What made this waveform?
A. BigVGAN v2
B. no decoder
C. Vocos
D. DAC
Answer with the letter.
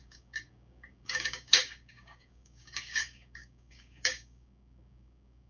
D